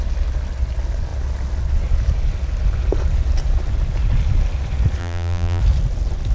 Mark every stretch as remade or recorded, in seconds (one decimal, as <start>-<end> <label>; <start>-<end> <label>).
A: 0.0-5.0 recorded; 5.0-5.6 remade; 5.6-6.3 recorded